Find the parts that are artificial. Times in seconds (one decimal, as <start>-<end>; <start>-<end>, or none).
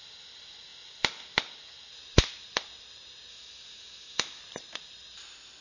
3.3-4.4